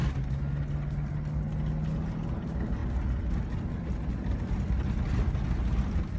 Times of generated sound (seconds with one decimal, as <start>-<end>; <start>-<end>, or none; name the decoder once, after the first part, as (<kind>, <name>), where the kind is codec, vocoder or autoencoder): none